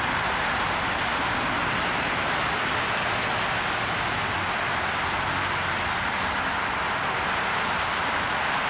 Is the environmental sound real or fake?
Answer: real